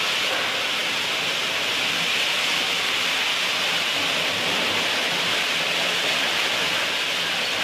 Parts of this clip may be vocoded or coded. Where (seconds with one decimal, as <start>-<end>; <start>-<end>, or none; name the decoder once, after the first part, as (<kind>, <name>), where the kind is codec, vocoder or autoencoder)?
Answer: none